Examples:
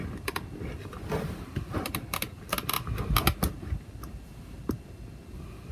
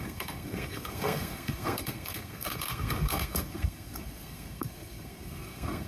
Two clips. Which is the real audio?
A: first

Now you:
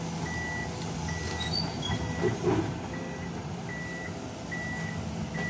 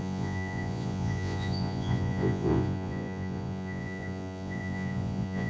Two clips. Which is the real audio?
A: first